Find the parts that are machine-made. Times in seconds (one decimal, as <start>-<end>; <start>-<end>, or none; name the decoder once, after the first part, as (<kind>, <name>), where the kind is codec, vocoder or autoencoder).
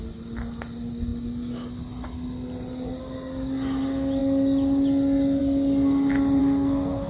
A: 6.4-7.1 (codec, SNAC)